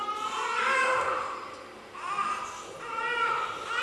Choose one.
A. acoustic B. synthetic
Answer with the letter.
A